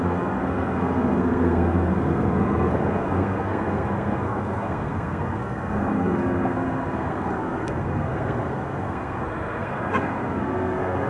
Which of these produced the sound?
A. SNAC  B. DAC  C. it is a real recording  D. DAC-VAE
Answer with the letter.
A